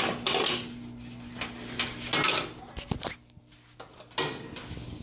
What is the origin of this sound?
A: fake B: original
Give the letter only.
B